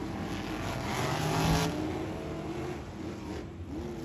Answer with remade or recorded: recorded